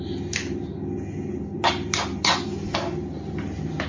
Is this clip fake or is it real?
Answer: real